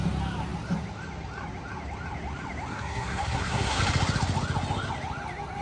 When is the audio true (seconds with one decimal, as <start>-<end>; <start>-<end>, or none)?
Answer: 0.0-2.7; 3.8-5.6